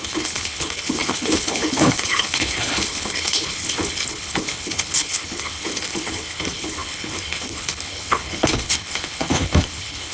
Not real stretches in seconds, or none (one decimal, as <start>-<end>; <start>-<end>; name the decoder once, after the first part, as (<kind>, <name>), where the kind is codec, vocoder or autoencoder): 0.0-10.1 (codec, HILCodec)